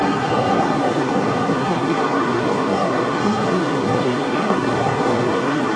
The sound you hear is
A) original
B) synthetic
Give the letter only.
B